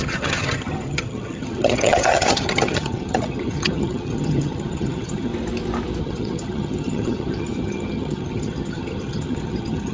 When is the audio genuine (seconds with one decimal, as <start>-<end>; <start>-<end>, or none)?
5.3-6.0